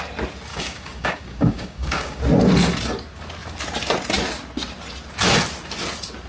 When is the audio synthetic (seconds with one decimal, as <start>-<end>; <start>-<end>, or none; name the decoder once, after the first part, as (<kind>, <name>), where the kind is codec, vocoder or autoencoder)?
0.5-2.2 (codec, DAC)